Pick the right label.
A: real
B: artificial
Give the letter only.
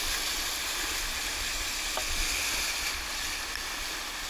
A